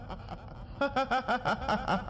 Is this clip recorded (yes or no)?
yes